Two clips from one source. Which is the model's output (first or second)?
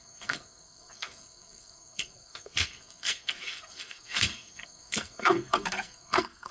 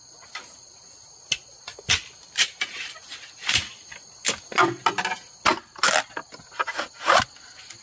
first